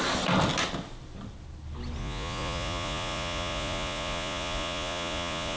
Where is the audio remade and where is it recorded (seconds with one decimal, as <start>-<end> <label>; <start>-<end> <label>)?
0.0-2.0 recorded; 2.0-5.6 remade